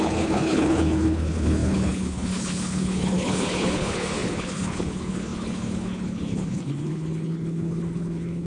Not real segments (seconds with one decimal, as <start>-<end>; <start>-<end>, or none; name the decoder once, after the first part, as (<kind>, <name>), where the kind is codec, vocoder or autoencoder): 0.0-8.5 (codec, HILCodec)